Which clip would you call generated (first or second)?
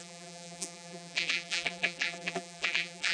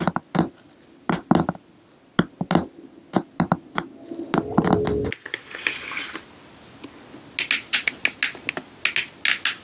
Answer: first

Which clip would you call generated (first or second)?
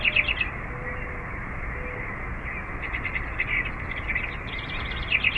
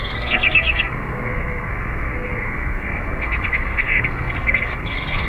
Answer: second